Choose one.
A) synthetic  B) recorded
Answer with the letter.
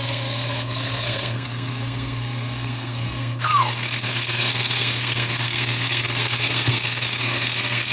A